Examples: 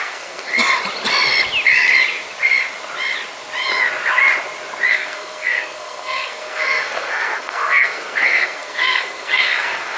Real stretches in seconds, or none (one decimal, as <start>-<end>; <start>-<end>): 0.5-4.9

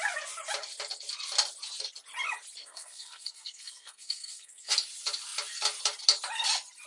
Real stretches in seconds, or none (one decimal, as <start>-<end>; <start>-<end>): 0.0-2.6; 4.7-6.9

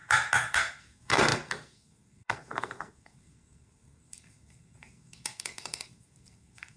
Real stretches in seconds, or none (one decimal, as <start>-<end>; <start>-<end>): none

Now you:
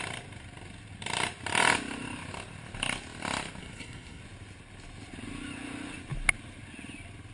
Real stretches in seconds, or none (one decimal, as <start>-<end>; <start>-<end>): 0.0-3.6; 4.2-7.3